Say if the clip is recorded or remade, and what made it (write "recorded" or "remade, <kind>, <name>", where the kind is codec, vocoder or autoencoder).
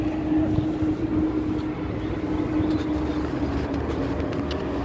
recorded